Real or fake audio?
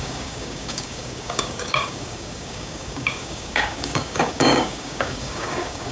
fake